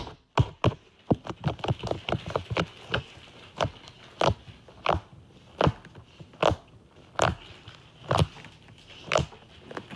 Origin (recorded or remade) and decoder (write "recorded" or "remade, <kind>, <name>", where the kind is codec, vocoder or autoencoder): recorded